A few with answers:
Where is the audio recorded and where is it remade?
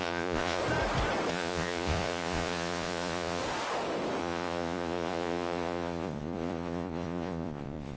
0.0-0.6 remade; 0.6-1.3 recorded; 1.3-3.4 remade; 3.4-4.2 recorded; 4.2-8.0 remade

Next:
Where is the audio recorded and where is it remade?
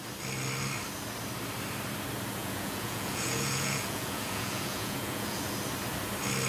0.0-2.4 recorded; 2.4-5.4 remade; 5.4-6.5 recorded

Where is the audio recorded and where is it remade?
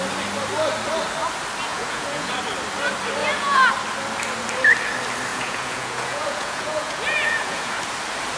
0.0-1.7 recorded; 1.7-2.3 remade; 2.3-3.2 recorded; 3.2-3.7 remade; 3.7-5.3 recorded; 5.3-7.8 remade; 7.8-8.4 recorded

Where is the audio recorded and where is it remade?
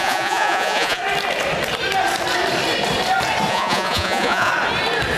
0.0-1.0 remade; 1.0-3.5 recorded; 3.5-4.5 remade; 4.5-5.2 recorded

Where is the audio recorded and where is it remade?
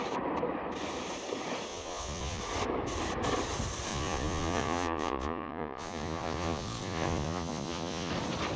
0.0-1.7 recorded; 1.7-2.4 remade; 2.4-3.9 recorded; 3.9-8.1 remade; 8.1-8.6 recorded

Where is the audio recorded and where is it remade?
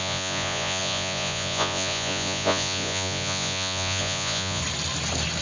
0.0-4.6 remade; 4.6-5.4 recorded